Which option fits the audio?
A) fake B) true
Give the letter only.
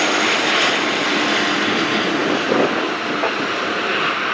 B